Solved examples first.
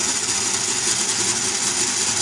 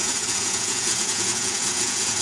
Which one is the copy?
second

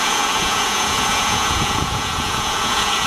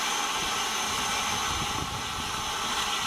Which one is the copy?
first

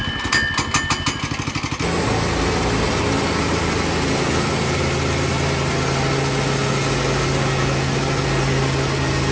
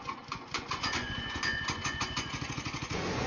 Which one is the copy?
second